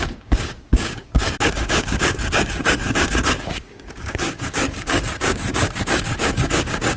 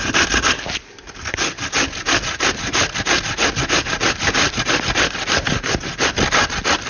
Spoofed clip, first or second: first